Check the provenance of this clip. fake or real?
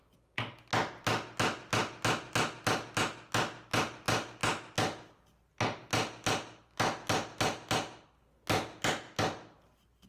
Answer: real